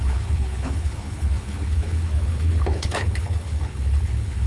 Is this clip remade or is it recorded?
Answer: remade